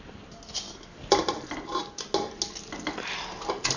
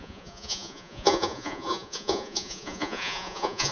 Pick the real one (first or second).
first